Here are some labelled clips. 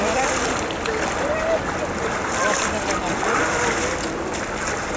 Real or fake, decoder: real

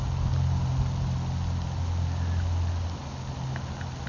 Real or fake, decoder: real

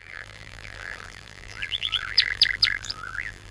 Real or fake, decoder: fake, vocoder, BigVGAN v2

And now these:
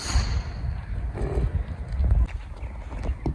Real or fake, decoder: real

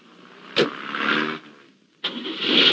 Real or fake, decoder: real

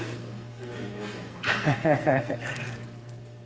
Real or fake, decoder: fake, codec, SNAC